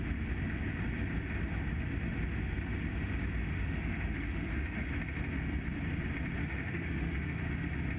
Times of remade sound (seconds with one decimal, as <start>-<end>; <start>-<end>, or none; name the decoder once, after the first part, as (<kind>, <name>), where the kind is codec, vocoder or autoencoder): 3.4-4.9 (autoencoder, DAC-VAE); 6.4-7.4